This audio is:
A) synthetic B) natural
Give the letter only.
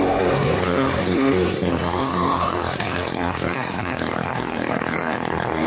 A